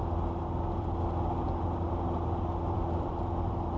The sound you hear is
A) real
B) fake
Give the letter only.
A